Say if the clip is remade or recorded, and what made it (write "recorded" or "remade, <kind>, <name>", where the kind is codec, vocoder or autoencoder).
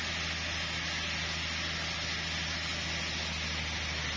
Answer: recorded